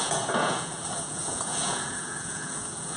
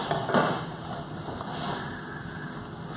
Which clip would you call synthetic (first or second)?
first